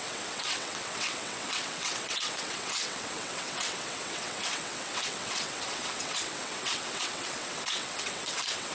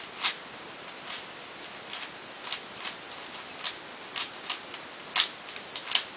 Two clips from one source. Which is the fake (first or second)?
first